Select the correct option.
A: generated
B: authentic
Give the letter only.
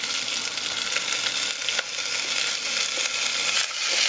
B